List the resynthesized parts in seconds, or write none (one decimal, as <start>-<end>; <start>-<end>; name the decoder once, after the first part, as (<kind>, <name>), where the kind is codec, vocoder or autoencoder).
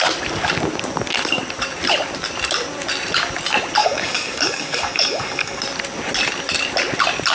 3.8-5.6 (codec, DAC)